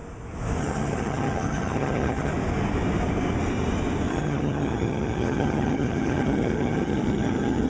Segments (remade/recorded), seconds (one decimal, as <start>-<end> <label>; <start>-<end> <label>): 0.0-0.6 recorded; 0.6-2.3 remade; 2.3-4.1 recorded; 4.1-7.7 remade

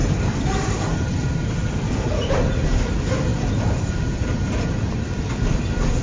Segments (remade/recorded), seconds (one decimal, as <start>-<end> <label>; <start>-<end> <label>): 0.0-6.0 recorded

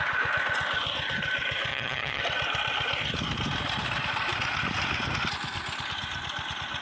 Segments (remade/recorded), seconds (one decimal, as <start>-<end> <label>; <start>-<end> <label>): 0.0-1.7 recorded; 1.7-2.2 remade; 2.2-6.8 recorded